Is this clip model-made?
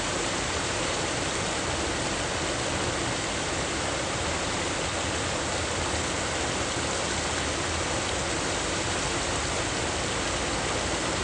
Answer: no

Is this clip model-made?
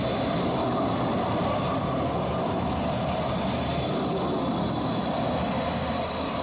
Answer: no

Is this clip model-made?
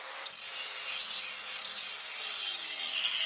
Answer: no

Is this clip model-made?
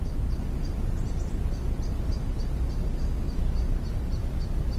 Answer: no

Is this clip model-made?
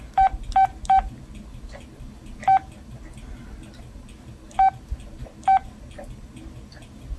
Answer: no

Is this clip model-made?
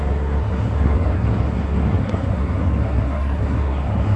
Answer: yes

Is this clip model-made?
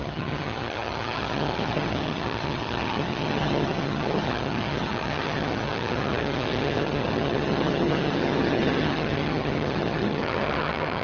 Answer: yes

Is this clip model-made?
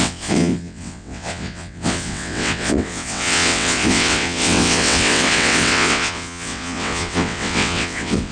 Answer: yes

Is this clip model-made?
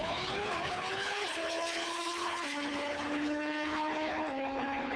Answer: yes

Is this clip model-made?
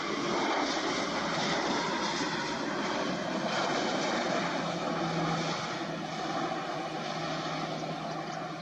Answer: no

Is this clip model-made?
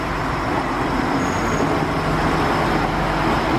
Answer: no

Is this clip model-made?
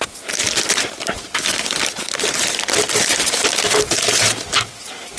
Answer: no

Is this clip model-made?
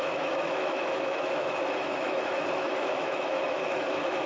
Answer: yes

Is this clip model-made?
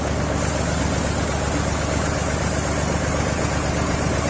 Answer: no